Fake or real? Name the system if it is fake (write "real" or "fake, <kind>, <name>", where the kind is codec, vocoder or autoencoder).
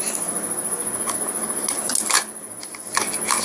real